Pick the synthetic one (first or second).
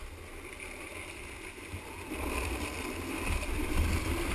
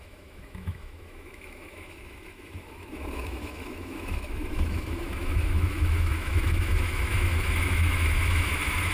second